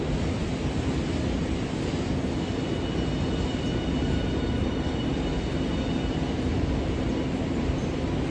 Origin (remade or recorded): recorded